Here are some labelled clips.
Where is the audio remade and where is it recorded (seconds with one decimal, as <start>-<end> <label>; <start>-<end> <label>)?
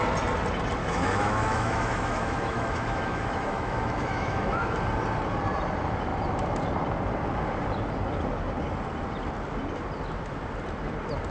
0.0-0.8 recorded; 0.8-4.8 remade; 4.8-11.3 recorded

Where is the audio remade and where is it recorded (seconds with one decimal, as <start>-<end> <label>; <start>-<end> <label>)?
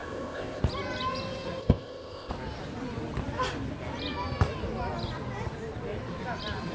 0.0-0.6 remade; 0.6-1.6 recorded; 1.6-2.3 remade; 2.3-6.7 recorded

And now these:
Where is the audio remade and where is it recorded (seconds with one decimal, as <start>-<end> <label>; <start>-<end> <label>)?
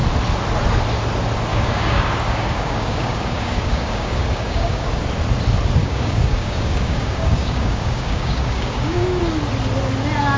0.0-1.5 recorded; 1.5-4.9 remade; 4.9-5.8 recorded; 5.8-9.2 remade; 9.2-10.4 recorded